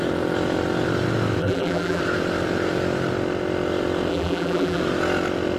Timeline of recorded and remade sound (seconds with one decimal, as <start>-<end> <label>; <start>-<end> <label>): 0.0-1.4 recorded; 1.4-2.0 remade; 2.0-4.1 recorded; 4.1-4.8 remade; 4.8-5.6 recorded